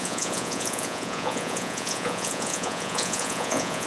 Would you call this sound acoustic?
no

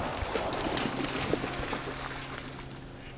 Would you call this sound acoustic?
yes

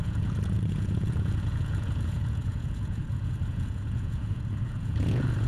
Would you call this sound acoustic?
no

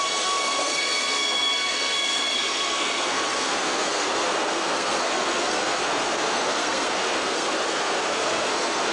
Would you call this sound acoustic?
no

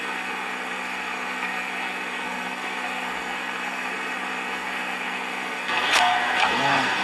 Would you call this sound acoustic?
no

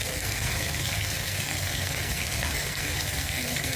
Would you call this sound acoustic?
no